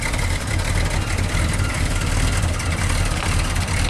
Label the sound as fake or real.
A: fake